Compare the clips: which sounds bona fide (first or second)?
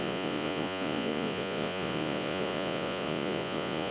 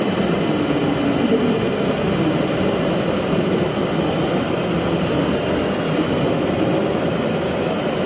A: second